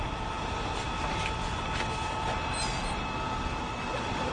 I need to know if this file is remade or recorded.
recorded